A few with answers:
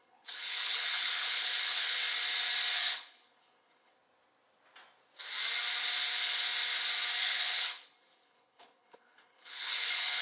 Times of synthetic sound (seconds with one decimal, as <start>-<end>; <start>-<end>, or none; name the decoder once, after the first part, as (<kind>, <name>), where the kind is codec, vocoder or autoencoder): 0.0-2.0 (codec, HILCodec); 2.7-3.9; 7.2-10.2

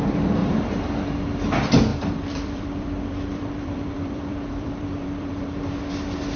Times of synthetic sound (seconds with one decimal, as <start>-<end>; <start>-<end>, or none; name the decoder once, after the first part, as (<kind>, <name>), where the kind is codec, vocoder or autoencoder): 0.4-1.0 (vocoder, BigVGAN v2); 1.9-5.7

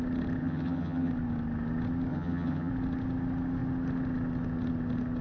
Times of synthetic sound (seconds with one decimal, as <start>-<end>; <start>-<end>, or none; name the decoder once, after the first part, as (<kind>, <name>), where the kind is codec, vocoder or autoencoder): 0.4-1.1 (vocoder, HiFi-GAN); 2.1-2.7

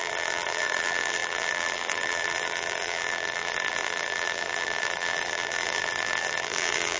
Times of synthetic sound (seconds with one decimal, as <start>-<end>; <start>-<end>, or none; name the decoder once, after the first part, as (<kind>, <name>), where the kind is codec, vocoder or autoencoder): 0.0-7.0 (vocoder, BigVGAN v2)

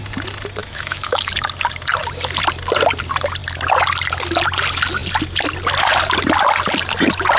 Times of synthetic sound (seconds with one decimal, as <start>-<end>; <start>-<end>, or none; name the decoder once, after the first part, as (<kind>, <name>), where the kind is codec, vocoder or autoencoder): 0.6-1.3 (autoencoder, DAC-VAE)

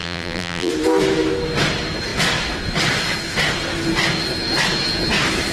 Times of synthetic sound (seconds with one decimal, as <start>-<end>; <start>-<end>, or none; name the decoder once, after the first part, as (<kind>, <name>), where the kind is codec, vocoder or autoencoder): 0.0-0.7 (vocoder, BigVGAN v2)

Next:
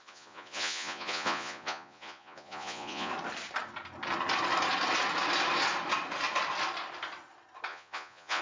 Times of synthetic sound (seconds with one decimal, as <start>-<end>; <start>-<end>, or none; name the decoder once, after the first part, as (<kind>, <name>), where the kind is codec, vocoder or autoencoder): 0.0-3.1 (vocoder, Vocos); 7.7-8.4